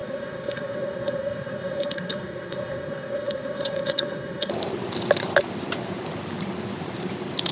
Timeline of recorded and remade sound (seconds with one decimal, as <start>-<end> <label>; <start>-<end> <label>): 0.0-4.5 remade; 4.5-7.5 recorded